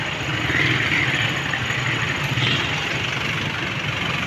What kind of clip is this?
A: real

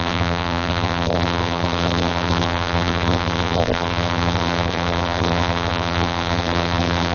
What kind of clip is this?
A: fake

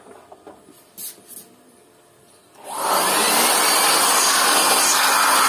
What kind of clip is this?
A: real